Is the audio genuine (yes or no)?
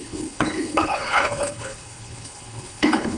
no